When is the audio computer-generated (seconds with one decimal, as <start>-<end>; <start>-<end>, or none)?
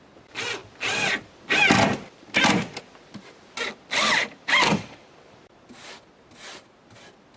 4.2-5.4